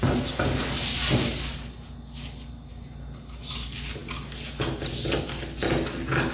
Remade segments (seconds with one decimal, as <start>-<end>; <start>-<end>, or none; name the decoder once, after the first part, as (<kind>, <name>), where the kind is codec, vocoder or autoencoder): none